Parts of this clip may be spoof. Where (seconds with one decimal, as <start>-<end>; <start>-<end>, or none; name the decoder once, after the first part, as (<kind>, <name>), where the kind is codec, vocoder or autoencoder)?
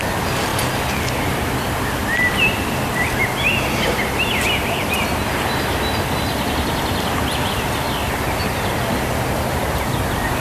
none